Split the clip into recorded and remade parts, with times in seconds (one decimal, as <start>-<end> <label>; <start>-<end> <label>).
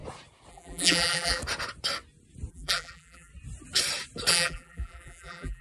0.0-0.5 recorded; 0.5-1.4 remade; 1.4-2.5 recorded; 2.5-3.3 remade; 3.3-4.3 recorded; 4.3-5.6 remade